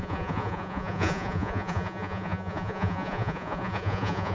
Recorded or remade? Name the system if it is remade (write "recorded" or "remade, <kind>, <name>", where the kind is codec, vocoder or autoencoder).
remade, vocoder, Vocos